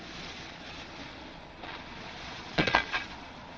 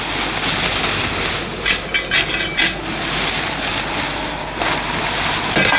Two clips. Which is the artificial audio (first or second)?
first